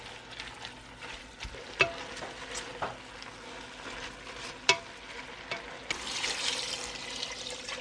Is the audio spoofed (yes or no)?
no